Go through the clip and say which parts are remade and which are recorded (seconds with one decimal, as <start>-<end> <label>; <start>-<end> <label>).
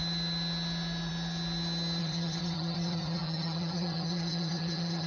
0.0-2.0 recorded; 2.0-5.1 remade